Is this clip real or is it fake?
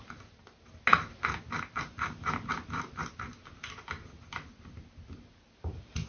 real